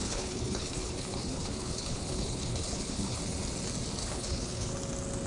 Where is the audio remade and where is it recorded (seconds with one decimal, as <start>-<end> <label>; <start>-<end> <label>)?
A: 0.0-3.2 remade; 3.2-4.0 recorded; 4.0-4.7 remade; 4.7-5.3 recorded